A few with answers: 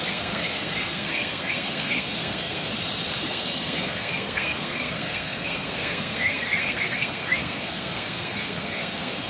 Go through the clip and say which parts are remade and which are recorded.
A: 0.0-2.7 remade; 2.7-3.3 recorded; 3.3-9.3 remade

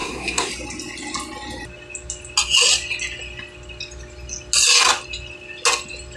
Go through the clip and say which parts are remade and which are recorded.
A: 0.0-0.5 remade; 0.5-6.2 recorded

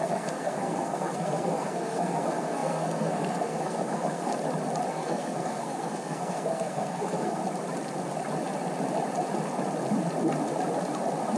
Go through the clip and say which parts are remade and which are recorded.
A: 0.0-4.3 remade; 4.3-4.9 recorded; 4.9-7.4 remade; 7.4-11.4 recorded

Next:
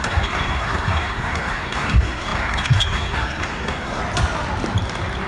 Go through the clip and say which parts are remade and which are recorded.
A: 0.0-4.0 remade; 4.0-5.3 recorded